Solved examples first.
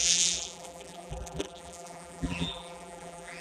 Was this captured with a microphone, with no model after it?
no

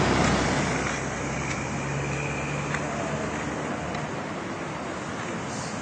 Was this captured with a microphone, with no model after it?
yes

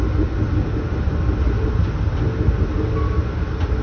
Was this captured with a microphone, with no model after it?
yes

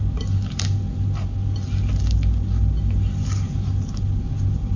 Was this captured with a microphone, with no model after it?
yes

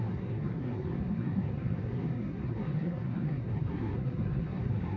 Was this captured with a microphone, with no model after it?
no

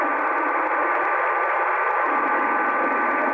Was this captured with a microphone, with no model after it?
yes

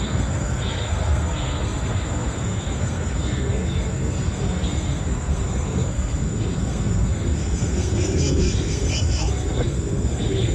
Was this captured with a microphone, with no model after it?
no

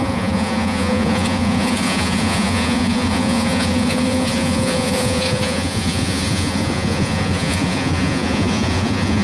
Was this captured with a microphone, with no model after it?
no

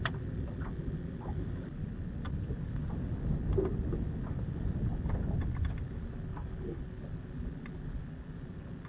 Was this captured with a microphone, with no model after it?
yes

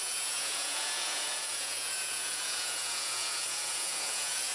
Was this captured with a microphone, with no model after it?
no